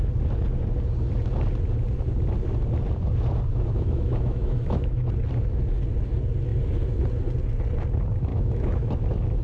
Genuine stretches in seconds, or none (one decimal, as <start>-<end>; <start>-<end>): 0.0-3.5; 5.1-8.3; 8.9-9.4